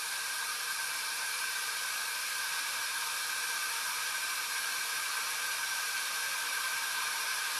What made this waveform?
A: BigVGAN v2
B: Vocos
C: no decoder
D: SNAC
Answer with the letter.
A